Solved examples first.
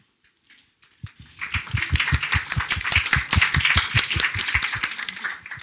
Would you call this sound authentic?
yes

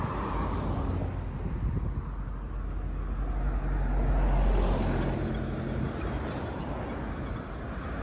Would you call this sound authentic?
yes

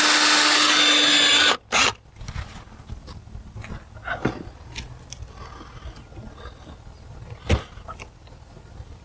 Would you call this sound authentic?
yes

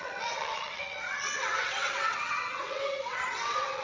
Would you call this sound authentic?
no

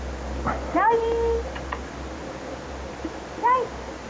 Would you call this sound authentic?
yes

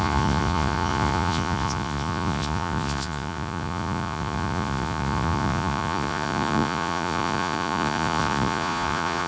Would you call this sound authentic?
no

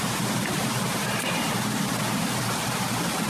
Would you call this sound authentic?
yes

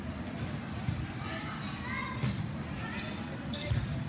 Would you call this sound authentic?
yes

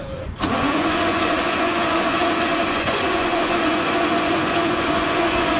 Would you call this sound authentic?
no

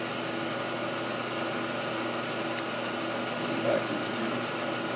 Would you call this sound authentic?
yes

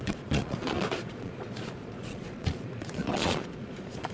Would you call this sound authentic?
no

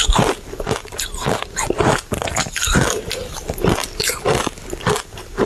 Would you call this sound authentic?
yes